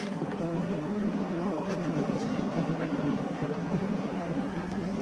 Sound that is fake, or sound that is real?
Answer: fake